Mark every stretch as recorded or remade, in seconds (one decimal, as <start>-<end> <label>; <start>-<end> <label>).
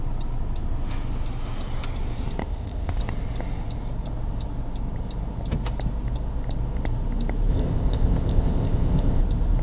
0.0-2.4 recorded; 2.4-3.0 remade; 3.0-7.5 recorded; 7.5-9.2 remade; 9.2-9.6 recorded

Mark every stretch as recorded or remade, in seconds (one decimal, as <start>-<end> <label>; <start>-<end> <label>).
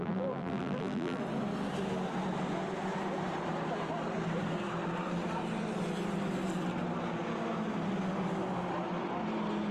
0.0-1.2 remade; 1.2-9.7 recorded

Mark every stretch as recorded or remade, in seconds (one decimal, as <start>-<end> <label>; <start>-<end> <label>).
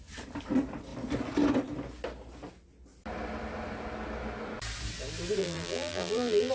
0.0-5.4 recorded; 5.4-6.5 remade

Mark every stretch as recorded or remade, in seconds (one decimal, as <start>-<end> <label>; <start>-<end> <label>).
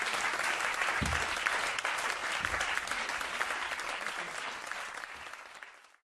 0.0-0.8 remade; 0.8-1.5 recorded; 1.5-6.1 remade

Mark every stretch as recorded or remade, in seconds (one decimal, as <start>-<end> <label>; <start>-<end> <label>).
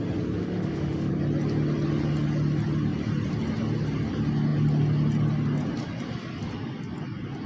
0.0-0.4 recorded; 0.4-1.1 remade; 1.1-7.5 recorded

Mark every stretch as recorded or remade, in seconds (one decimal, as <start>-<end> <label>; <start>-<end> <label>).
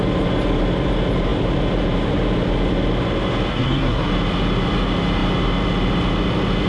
0.0-3.5 recorded; 3.5-4.1 remade; 4.1-6.7 recorded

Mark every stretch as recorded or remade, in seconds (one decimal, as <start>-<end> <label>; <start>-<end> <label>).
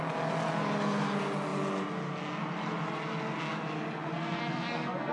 0.0-4.1 recorded; 4.1-5.1 remade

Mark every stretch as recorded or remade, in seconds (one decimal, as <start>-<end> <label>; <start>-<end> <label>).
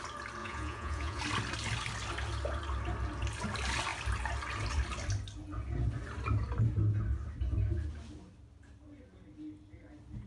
0.0-0.4 recorded; 0.4-1.2 remade; 1.2-10.3 recorded